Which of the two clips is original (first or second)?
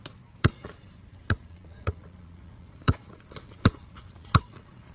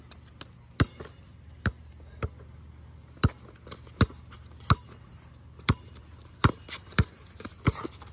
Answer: second